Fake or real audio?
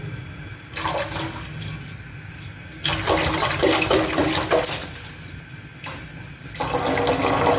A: real